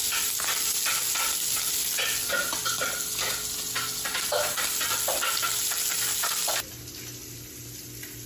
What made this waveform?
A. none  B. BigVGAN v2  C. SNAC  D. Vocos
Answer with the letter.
A